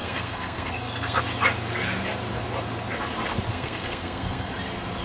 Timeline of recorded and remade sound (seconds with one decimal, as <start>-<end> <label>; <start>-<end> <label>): 0.0-1.2 remade; 1.2-3.5 recorded; 3.5-4.5 remade; 4.5-5.0 recorded